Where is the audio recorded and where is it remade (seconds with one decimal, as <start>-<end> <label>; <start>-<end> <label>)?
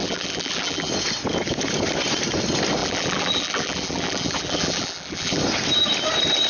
0.0-0.9 remade; 0.9-2.8 recorded; 2.8-5.4 remade; 5.4-6.5 recorded